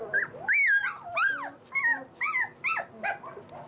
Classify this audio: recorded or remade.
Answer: recorded